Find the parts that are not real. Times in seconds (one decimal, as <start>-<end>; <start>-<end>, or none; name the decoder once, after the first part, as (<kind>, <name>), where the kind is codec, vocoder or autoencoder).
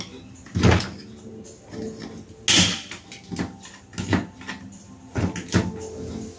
none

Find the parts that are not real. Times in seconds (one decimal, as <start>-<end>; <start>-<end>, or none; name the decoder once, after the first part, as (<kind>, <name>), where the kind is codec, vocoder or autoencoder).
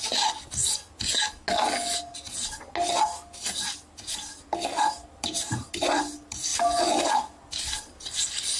none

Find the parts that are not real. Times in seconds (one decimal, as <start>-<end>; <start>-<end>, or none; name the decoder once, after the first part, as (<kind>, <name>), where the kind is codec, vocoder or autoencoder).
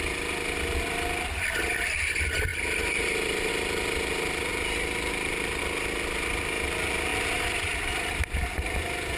none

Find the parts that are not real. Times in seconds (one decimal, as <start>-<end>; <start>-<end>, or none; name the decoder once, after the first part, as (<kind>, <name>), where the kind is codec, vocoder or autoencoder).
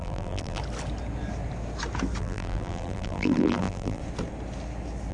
0.0-0.6 (vocoder, BigVGAN v2); 2.2-4.0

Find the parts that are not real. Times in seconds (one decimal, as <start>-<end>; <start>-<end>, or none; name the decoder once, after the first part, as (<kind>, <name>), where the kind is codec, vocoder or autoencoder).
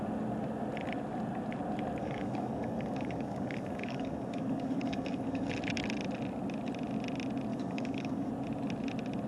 2.0-5.5 (codec, DAC); 7.5-8.3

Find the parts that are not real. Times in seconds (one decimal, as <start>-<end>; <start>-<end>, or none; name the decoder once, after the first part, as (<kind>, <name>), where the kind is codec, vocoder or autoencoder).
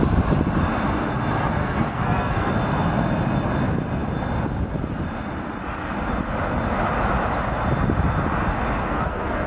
1.6-2.5 (codec, SNAC); 8.8-9.5